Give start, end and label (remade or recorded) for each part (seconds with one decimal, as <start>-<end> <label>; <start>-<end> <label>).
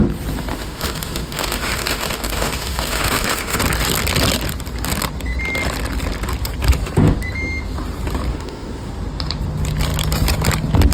0.0-0.5 recorded; 0.5-3.6 remade; 3.6-8.3 recorded; 8.3-8.9 remade; 8.9-10.9 recorded